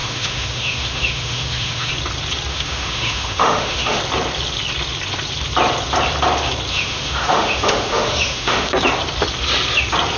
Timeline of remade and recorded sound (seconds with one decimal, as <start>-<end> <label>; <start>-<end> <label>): 0.0-1.9 remade; 1.9-2.5 recorded; 2.5-4.0 remade; 4.0-6.7 recorded; 6.7-8.7 remade; 8.7-10.2 recorded